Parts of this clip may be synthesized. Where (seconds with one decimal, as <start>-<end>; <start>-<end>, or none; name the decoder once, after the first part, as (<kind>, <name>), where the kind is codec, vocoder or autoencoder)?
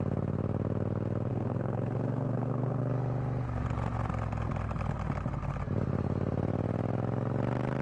1.3-2.8 (codec, SNAC)